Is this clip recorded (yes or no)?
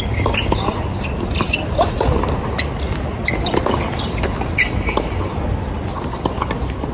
yes